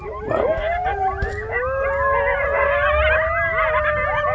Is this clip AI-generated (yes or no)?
no